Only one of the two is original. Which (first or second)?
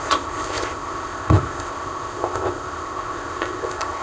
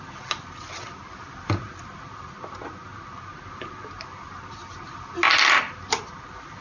second